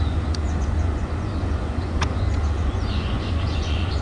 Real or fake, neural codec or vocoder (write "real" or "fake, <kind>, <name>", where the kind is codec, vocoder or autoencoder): fake, vocoder, Vocos